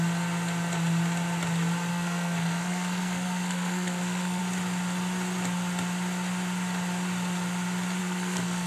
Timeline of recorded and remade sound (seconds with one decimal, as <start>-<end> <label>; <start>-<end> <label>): 0.0-1.9 recorded; 1.9-4.4 remade; 4.4-8.0 recorded; 8.0-8.7 remade